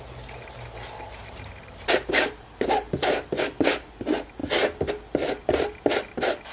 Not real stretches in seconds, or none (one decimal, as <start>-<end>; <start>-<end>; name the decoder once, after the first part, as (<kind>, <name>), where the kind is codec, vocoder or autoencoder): 1.2-3.9 (vocoder, BigVGAN v2)